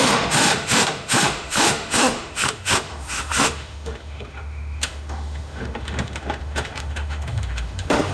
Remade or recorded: remade